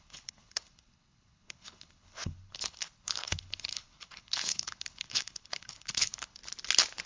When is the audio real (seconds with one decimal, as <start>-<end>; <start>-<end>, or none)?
6.4-7.1